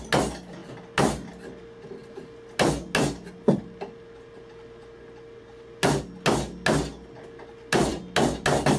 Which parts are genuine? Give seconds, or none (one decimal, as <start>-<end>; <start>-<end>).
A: 0.0-8.8